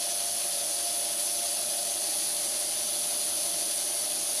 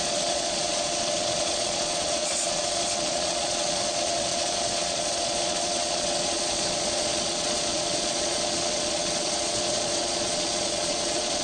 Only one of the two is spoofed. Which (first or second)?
second